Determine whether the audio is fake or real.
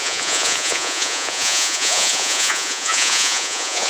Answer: fake